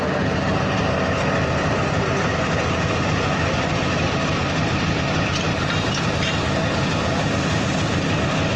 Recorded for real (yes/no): yes